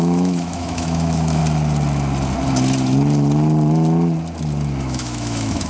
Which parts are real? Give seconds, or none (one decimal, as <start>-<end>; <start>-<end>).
1.4-4.8